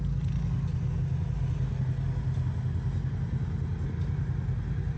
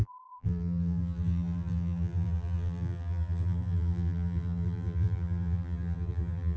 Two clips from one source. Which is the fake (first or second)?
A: second